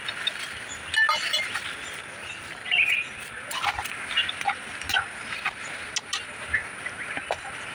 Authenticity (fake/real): real